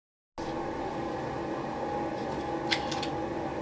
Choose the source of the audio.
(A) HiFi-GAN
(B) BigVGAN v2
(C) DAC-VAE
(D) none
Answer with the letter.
D